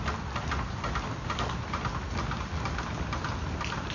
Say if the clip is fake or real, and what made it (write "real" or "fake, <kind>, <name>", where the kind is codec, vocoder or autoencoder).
real